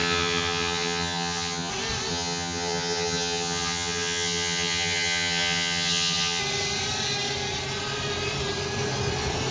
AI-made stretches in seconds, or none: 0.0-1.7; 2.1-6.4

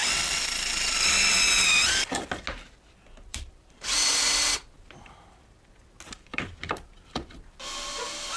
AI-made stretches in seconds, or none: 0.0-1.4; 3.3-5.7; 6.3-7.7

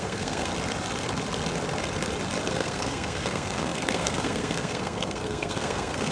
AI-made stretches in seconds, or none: 0.0-0.5; 2.5-6.1

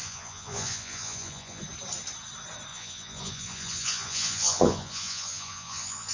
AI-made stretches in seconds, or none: 0.0-1.6; 2.7-6.1